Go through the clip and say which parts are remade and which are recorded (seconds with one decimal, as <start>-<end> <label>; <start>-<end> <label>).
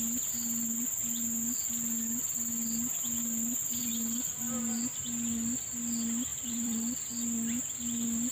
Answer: 0.0-3.8 recorded; 3.8-4.4 remade; 4.4-6.3 recorded; 6.3-7.0 remade; 7.0-8.3 recorded